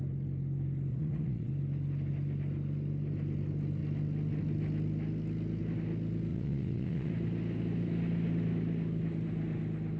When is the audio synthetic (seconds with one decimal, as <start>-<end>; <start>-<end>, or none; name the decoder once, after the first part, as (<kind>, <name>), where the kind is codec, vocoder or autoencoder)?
0.9-1.5 (vocoder, Vocos); 6.3-7.1